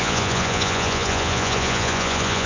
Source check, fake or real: fake